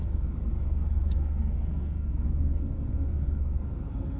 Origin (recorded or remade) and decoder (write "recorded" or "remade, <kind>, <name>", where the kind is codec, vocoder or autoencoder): remade, codec, SNAC